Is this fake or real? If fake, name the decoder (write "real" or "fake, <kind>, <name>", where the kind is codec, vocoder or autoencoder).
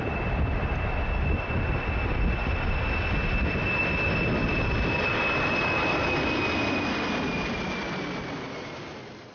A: real